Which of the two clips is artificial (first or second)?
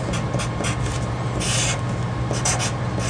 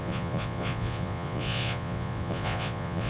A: second